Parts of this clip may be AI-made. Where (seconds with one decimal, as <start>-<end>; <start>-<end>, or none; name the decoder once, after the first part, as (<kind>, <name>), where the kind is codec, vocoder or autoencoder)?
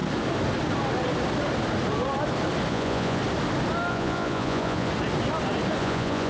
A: 2.7-3.2 (vocoder, Vocos); 3.9-4.9; 5.8-6.3